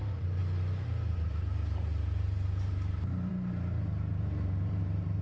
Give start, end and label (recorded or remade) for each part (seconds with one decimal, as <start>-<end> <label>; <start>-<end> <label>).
0.0-3.3 remade; 3.3-4.1 recorded; 4.1-5.2 remade